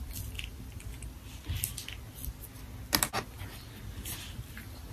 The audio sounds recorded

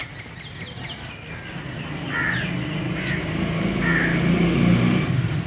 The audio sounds recorded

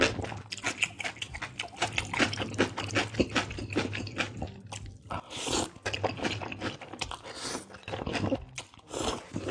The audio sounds recorded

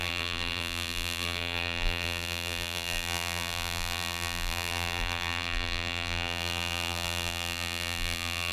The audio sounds remade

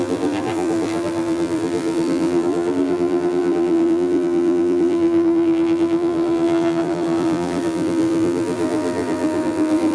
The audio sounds remade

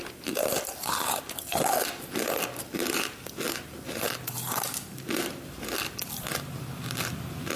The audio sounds remade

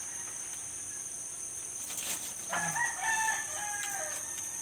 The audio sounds remade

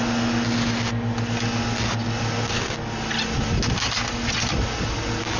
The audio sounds recorded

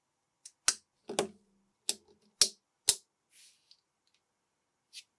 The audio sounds recorded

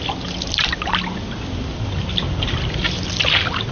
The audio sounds recorded